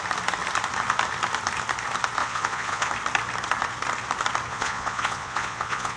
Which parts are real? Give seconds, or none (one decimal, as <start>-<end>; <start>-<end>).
0.0-2.2; 2.9-4.5